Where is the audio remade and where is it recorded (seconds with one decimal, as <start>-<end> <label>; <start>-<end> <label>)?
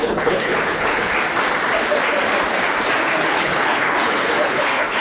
0.0-1.1 remade; 1.1-3.1 recorded; 3.1-5.0 remade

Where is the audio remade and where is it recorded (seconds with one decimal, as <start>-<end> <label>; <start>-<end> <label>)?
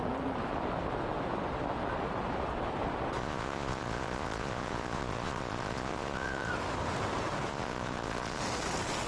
0.0-3.2 recorded; 3.2-6.5 remade; 6.5-7.5 recorded; 7.5-8.4 remade; 8.4-9.1 recorded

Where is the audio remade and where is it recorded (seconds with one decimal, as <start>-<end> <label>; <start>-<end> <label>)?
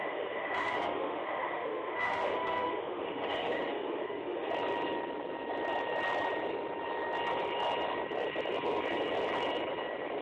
0.0-4.5 remade; 4.5-10.2 recorded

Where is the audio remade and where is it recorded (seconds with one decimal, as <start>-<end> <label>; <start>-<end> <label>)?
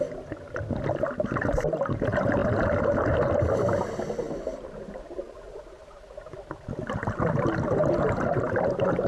0.0-2.4 recorded; 2.4-3.9 remade; 3.9-7.8 recorded; 7.8-8.3 remade; 8.3-9.1 recorded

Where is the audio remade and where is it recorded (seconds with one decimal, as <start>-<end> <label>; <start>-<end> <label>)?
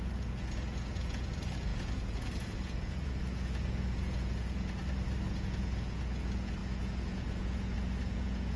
0.0-4.8 remade; 4.8-5.3 recorded; 5.3-8.6 remade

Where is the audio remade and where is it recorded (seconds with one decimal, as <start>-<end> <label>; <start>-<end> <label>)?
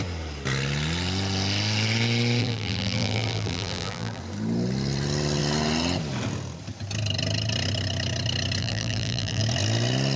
0.0-2.4 recorded; 2.4-4.2 remade; 4.2-8.6 recorded; 8.6-9.4 remade; 9.4-10.2 recorded